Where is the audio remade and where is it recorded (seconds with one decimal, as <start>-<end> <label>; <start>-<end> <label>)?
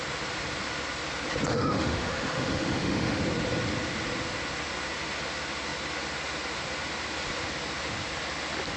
0.0-1.5 recorded; 1.5-3.2 remade; 3.2-8.8 recorded